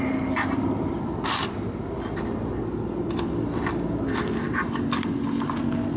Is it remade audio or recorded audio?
recorded